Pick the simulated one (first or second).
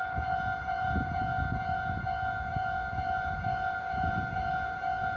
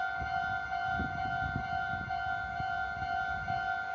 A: first